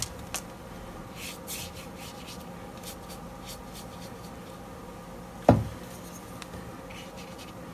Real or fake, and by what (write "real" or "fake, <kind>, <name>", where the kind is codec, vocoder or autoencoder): real